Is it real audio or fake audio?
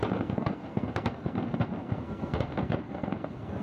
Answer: fake